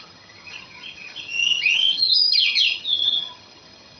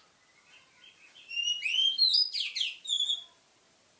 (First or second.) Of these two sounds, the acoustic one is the second